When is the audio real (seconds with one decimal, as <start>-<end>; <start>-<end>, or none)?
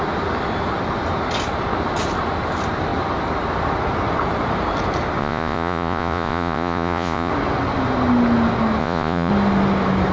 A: 0.0-5.2; 7.3-8.8; 9.3-10.1